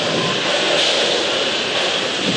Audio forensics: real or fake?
real